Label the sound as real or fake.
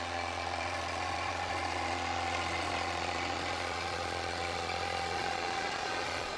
fake